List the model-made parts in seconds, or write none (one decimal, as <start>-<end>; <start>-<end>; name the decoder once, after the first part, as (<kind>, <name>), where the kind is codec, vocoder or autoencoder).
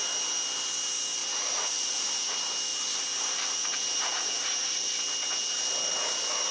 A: 1.2-2.3 (vocoder, BigVGAN v2); 2.7-4.9